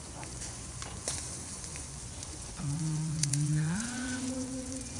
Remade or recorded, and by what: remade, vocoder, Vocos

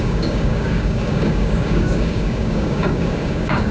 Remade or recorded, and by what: remade, codec, DAC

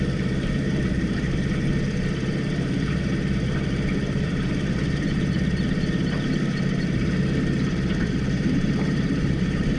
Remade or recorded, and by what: remade, vocoder, BigVGAN v2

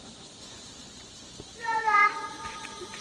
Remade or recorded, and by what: remade, vocoder, Vocos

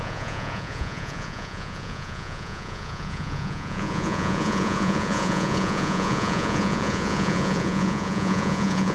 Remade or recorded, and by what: remade, vocoder, Vocos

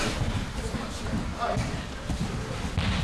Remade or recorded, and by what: recorded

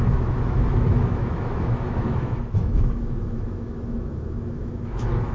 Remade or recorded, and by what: remade, autoencoder, DAC-VAE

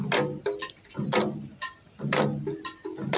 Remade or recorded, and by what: recorded